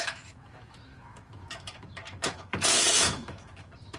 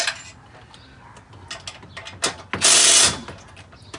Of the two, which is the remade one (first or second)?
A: first